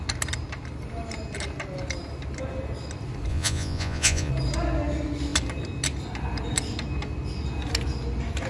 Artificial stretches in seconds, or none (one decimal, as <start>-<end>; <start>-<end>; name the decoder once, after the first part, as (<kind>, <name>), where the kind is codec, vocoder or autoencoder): 3.3-4.3 (vocoder, Vocos)